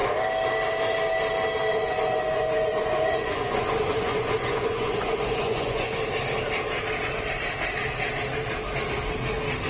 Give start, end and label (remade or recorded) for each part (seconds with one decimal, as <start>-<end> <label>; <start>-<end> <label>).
0.0-1.7 recorded; 1.7-5.9 remade; 5.9-9.7 recorded